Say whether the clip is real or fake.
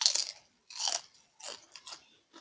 real